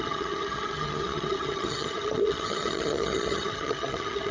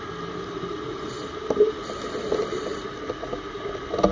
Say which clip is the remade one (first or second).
first